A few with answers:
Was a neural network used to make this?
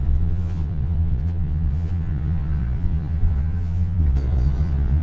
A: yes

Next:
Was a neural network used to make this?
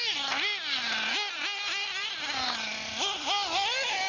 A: no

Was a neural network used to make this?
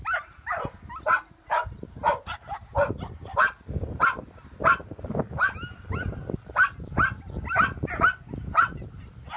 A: no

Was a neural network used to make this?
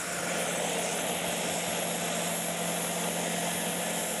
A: no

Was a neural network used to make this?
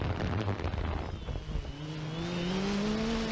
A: no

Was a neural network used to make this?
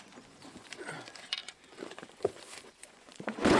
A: yes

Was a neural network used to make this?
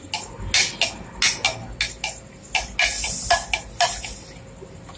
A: no